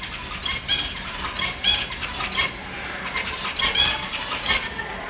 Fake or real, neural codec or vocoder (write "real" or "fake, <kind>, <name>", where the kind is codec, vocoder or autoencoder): real